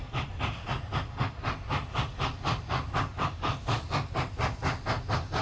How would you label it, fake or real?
real